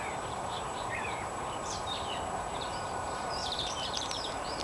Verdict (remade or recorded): remade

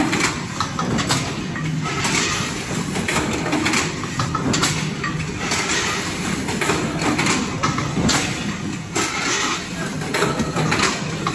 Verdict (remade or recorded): recorded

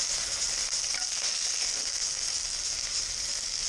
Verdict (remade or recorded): recorded